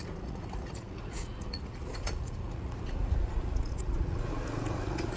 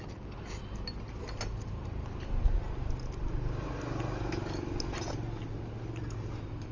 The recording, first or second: second